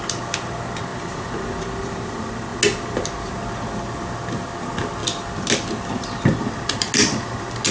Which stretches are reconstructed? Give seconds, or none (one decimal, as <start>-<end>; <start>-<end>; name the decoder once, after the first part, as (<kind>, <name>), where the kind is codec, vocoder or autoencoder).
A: none